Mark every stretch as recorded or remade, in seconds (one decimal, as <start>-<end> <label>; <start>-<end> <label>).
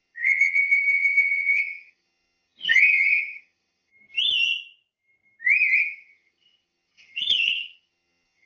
0.0-3.9 remade; 3.9-5.8 recorded; 5.8-8.5 remade